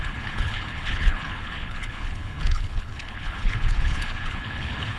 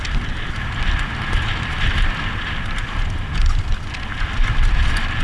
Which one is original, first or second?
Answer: second